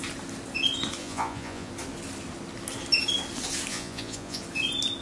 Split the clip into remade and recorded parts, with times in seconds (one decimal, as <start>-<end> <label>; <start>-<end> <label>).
0.0-1.0 recorded; 1.0-1.7 remade; 1.7-3.7 recorded; 3.7-4.4 remade; 4.4-5.0 recorded

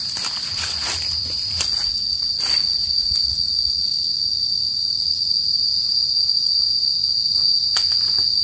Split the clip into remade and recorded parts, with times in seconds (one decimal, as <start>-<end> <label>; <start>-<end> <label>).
0.0-3.0 recorded; 3.0-3.9 remade; 3.9-4.8 recorded; 4.8-5.5 remade; 5.5-8.4 recorded